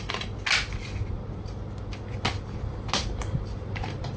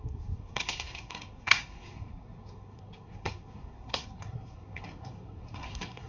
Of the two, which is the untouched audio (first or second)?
first